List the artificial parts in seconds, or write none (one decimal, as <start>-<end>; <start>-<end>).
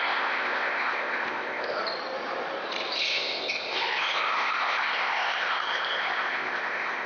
0.0-1.8; 3.0-7.1